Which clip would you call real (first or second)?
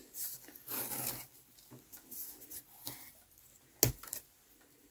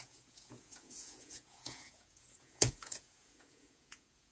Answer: first